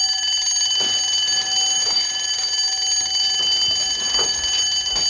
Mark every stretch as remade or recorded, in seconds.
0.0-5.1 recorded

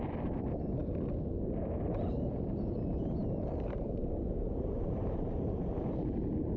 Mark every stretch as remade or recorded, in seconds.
0.0-3.2 recorded; 3.2-6.6 remade

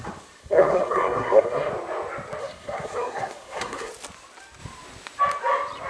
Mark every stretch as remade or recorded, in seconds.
0.0-0.4 recorded; 0.4-1.7 remade; 1.7-2.4 recorded; 2.4-3.9 remade; 3.9-5.9 recorded

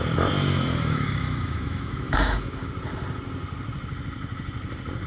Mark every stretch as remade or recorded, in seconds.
0.0-0.4 recorded; 0.4-2.7 remade; 2.7-5.1 recorded

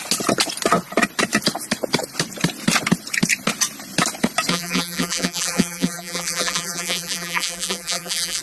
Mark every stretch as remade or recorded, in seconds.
0.0-4.5 recorded; 4.5-8.4 remade

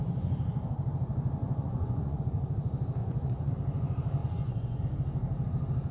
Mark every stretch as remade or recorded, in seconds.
0.0-1.4 recorded; 1.4-2.2 remade; 2.2-3.0 recorded; 3.0-3.5 remade; 3.5-4.2 recorded; 4.2-4.8 remade; 4.8-5.9 recorded